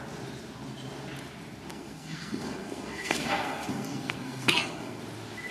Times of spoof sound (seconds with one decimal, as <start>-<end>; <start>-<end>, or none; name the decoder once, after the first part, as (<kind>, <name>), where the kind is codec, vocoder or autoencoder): 1.7-5.0 (codec, SNAC)